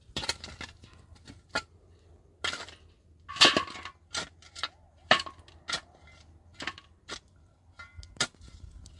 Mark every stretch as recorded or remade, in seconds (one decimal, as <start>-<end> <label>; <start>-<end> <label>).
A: 0.0-9.0 recorded